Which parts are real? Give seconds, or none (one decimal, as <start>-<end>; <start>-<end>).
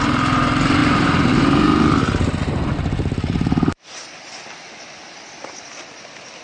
0.0-0.8; 1.3-6.4